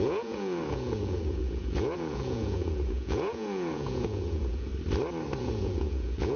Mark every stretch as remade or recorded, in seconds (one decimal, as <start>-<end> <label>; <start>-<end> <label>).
0.0-4.7 remade; 4.7-5.4 recorded; 5.4-6.4 remade